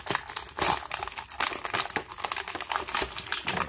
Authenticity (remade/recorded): recorded